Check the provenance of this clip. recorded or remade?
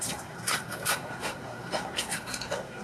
remade